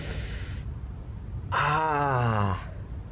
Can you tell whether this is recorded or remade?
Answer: recorded